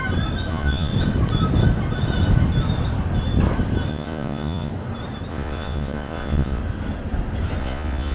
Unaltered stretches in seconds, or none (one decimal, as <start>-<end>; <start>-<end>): 0.0-0.5; 0.9-3.9; 4.7-5.3; 6.6-7.6